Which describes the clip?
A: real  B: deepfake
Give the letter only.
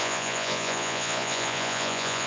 B